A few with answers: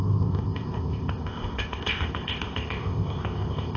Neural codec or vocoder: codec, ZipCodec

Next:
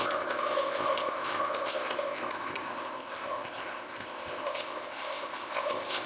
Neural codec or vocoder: codec, ZipCodec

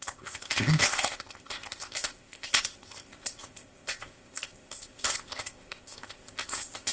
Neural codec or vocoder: codec, ZipCodec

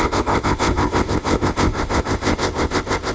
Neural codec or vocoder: codec, ZipCodec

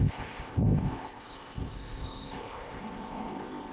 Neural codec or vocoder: codec, ZipCodec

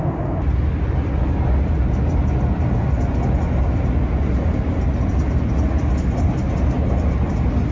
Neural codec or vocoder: none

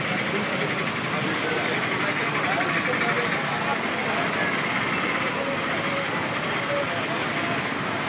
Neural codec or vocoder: none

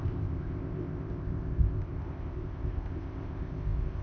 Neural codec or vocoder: codec, ZipCodec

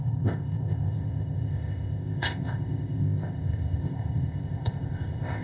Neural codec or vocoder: codec, ZipCodec